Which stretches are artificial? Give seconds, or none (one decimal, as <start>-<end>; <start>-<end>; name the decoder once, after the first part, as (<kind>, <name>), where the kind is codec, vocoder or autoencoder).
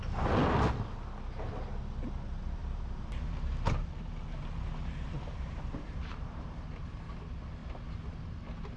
2.6-6.9 (vocoder, BigVGAN v2)